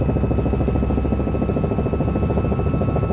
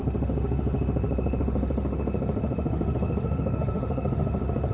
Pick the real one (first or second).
first